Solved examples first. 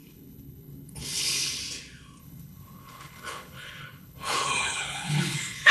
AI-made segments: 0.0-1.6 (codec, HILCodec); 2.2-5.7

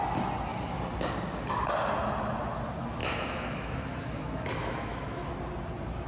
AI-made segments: 3.0-5.3 (autoencoder, DAC-VAE)

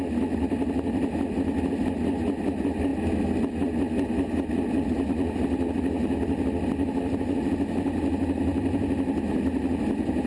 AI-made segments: none

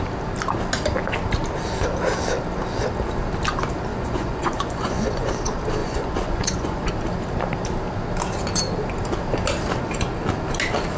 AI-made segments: 3.9-5.3 (vocoder, Vocos); 5.8-6.9